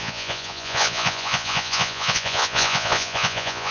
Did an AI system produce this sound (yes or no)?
yes